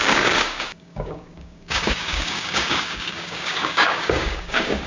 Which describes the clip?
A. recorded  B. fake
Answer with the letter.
B